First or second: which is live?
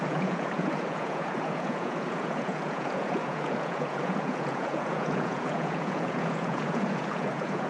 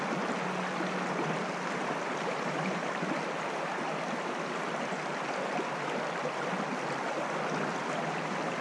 second